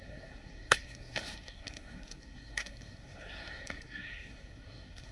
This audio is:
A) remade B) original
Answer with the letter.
A